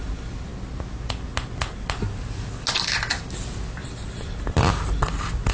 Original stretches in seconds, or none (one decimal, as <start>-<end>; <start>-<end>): 0.0-5.5